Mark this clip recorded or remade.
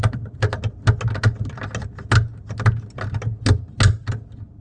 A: recorded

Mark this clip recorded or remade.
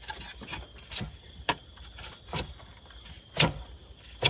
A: recorded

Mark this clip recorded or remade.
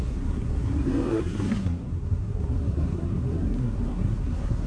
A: remade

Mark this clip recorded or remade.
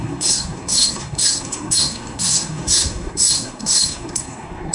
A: remade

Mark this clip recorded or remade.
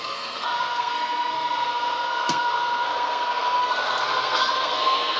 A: remade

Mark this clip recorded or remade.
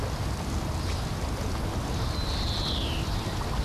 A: recorded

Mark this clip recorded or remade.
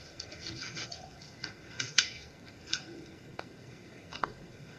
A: remade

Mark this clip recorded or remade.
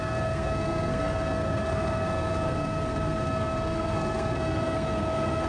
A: remade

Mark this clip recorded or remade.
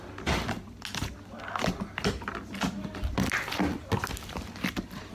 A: recorded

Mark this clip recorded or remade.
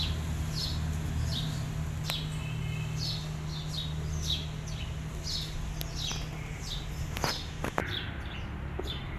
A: recorded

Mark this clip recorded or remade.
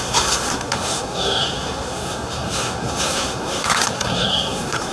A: remade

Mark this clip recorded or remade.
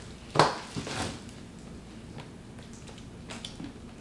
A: recorded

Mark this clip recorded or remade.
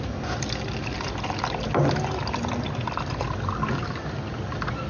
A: recorded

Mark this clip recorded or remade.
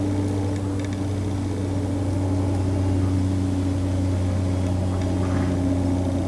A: recorded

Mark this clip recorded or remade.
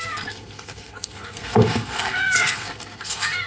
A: remade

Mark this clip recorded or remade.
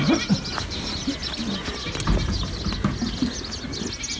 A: recorded